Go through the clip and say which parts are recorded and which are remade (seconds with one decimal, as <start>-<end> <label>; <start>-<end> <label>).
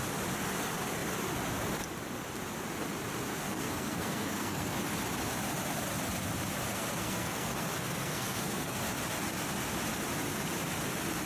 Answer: 0.0-3.3 recorded; 3.3-4.8 remade; 4.8-6.7 recorded; 6.7-8.8 remade; 8.8-11.3 recorded